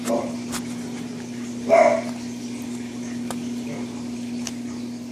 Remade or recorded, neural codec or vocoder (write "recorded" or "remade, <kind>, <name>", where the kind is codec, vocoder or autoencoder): recorded